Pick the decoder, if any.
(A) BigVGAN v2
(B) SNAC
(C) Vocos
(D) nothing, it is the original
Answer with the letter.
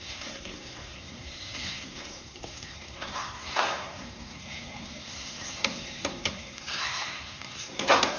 B